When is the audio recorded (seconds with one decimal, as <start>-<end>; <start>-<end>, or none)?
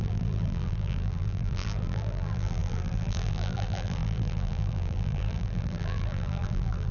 none